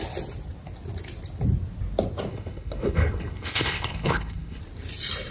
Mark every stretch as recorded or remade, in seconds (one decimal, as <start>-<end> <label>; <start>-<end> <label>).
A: 0.0-2.3 recorded; 2.3-4.6 remade; 4.6-5.3 recorded